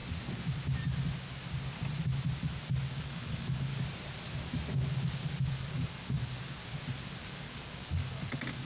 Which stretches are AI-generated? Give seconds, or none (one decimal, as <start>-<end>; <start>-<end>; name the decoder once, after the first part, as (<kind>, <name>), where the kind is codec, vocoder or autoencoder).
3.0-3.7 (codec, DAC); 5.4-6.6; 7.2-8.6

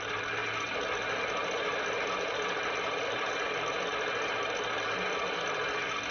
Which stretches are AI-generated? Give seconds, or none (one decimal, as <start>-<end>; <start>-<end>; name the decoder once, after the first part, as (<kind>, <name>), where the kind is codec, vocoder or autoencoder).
none

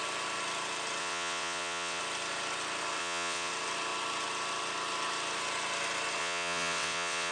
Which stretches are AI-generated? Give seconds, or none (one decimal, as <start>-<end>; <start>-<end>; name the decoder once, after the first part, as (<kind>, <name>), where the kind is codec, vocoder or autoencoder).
1.0-2.0 (vocoder, WaveNeXt); 3.0-3.5; 6.2-7.3